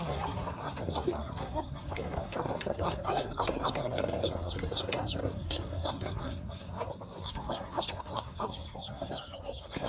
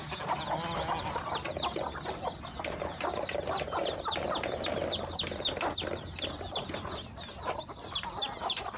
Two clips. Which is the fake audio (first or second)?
first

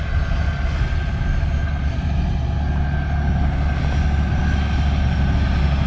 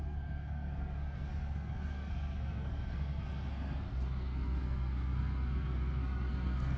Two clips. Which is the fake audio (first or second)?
second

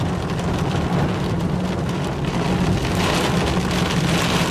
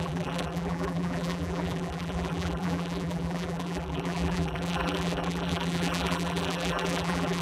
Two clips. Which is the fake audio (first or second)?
second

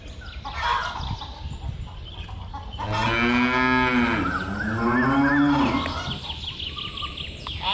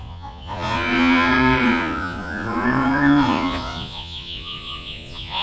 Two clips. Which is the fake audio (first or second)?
second